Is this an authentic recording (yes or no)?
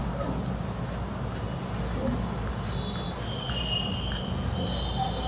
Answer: yes